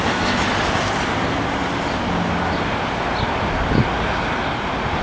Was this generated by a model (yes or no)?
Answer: no